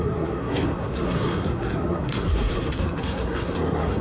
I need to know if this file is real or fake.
fake